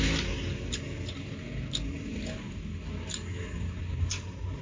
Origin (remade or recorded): recorded